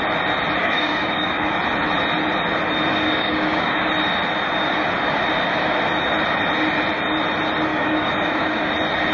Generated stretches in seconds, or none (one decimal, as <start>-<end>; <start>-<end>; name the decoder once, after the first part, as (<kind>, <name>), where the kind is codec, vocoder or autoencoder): 0.6-1.6 (codec, DAC); 2.9-3.9; 7.7-8.7

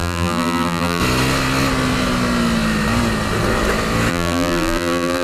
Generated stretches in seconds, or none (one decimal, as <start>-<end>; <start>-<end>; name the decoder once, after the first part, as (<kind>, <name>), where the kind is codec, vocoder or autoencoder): 0.0-1.0 (vocoder, BigVGAN v2); 4.1-5.2

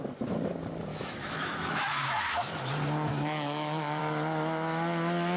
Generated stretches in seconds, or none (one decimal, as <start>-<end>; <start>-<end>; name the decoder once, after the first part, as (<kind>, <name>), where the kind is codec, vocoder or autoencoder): 0.9-2.6 (autoencoder, DAC-VAE); 3.1-4.0

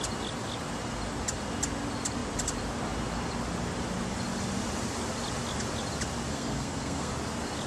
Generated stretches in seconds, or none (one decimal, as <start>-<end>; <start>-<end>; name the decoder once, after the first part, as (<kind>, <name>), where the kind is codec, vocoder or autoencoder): 6.3-7.1 (codec, SNAC)

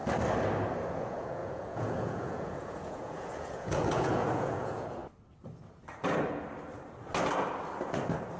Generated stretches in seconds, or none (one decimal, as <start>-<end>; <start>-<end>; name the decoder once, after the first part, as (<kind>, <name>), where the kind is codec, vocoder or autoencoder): 0.9-5.0 (vocoder, Vocos)